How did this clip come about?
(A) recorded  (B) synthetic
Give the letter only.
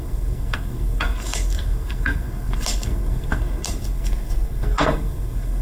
B